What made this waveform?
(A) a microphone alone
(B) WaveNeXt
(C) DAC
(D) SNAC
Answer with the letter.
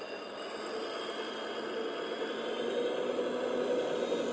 A